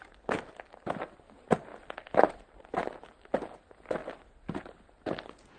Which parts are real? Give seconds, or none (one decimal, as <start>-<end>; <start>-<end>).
0.0-5.6